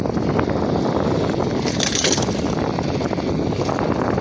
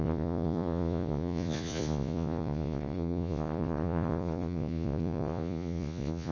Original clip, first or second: first